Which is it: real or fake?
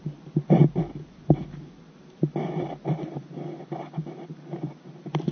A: real